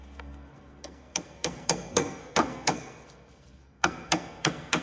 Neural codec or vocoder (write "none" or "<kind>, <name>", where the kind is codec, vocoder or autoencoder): codec, SNAC